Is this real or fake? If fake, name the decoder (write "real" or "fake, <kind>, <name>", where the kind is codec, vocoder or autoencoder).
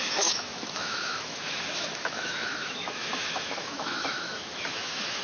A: fake, autoencoder, DAC-VAE